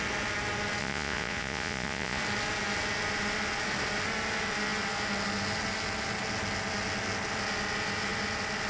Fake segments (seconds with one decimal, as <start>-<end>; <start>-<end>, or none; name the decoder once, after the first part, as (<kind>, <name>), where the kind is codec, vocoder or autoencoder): 0.8-2.2 (vocoder, Vocos)